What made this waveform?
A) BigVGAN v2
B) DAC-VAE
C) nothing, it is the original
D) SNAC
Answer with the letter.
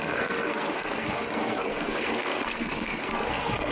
D